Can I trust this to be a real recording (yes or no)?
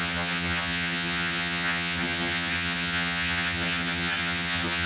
no